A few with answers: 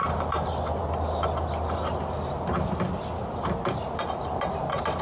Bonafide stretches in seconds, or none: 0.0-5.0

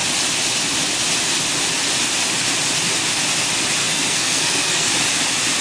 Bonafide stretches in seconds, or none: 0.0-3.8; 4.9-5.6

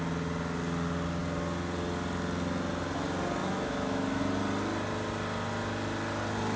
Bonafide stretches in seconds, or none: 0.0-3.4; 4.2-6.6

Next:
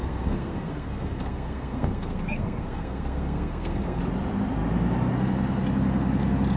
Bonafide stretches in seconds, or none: 4.0-6.6

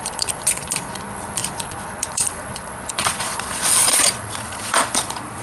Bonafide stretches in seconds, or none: none

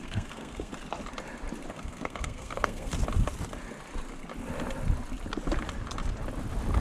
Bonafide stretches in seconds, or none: 0.7-1.7; 2.9-6.8